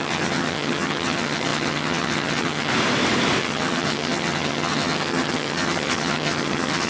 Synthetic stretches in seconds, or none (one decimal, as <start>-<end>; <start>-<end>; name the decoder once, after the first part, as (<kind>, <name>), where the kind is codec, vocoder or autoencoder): 0.0-2.7 (vocoder, HiFi-GAN); 3.4-6.9